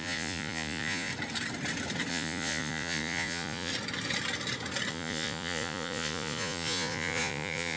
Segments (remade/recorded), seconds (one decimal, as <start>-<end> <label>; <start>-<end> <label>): 0.0-1.1 remade; 1.1-2.1 recorded; 2.1-3.7 remade; 3.7-4.9 recorded; 4.9-7.8 remade